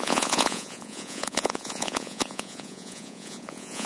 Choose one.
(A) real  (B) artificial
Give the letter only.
B